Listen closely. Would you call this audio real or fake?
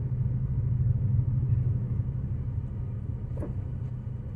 real